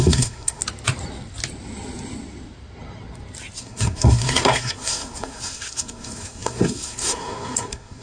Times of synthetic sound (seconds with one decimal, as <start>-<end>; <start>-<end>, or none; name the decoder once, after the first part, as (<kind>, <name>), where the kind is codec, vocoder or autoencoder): 0.0-0.6 (codec, SNAC); 3.6-8.0